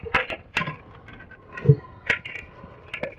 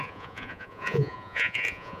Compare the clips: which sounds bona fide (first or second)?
first